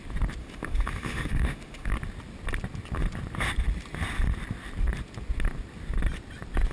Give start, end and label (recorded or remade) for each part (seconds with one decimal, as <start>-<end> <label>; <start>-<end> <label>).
0.0-0.4 recorded; 0.4-1.9 remade; 1.9-6.7 recorded